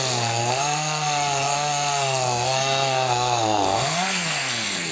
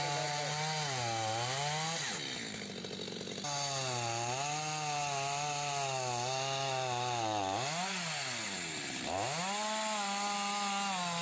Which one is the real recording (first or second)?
second